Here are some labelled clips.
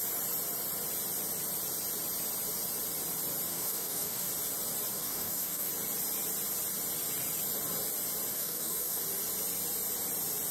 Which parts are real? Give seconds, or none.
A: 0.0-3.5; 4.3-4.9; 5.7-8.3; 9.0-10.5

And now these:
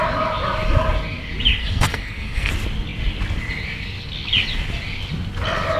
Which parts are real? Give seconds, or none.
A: 0.0-1.6; 2.5-5.8